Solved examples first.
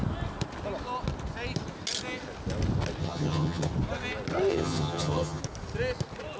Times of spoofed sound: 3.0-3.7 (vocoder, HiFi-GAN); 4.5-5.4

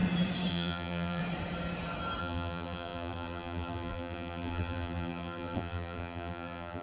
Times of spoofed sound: 0.5-1.2 (vocoder, BigVGAN v2); 2.2-6.8